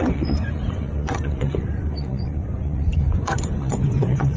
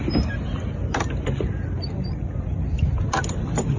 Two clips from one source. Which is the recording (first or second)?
second